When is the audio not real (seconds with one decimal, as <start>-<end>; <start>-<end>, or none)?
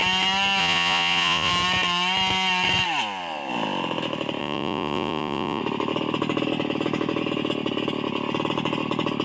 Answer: 0.6-1.5; 4.4-5.6